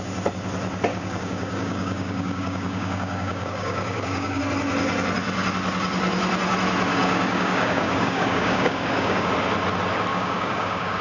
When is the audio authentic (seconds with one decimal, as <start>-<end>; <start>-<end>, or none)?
0.0-0.9; 4.4-6.9; 9.3-10.1